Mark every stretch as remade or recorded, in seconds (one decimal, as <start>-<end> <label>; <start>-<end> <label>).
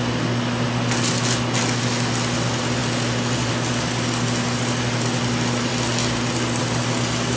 0.0-7.4 recorded